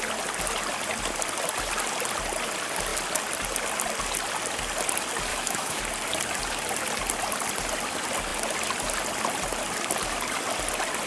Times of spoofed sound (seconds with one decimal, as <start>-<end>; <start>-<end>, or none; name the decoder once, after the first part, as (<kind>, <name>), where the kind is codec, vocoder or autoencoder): 5.3-5.8 (autoencoder, DAC-VAE)